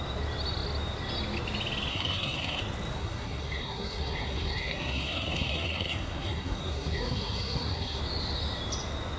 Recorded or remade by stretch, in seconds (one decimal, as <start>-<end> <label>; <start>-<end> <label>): 0.0-1.9 recorded; 1.9-2.6 remade; 2.6-3.0 recorded; 3.0-8.0 remade; 8.0-9.2 recorded